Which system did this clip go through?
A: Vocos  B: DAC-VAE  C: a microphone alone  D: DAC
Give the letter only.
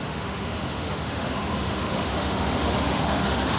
B